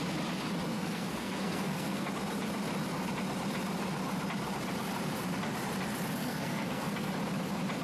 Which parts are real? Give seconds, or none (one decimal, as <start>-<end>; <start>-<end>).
0.0-0.7; 2.1-6.2; 7.1-7.8